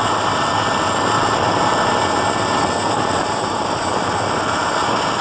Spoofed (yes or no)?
no